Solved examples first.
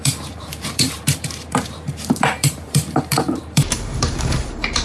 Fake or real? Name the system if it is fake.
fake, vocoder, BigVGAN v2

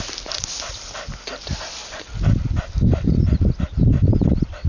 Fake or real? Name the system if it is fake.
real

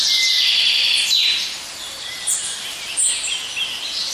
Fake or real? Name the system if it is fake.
real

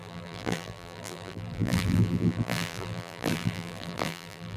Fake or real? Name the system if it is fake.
fake, vocoder, BigVGAN v2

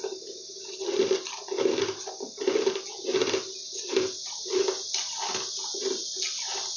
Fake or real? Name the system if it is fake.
real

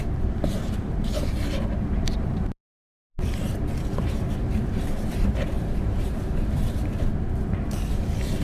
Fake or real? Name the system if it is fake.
fake, vocoder, BigVGAN v2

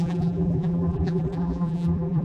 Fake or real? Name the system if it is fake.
fake, vocoder, BigVGAN v2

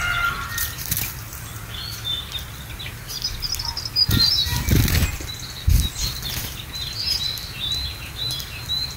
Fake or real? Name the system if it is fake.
real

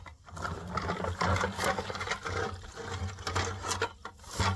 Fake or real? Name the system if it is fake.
real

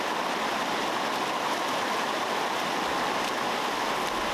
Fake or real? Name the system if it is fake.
real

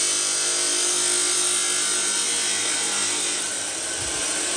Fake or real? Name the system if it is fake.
real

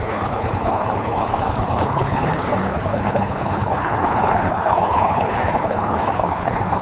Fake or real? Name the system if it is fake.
fake, codec, HILCodec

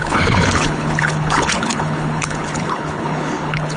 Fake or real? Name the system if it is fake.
fake, codec, HILCodec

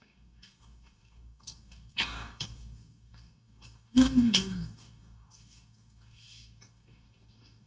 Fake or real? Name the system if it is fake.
fake, codec, DAC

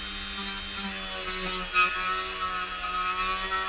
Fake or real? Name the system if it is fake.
real